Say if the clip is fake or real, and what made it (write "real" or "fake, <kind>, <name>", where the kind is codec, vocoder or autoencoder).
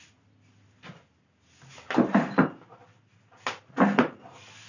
real